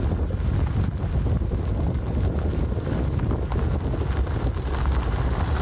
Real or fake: real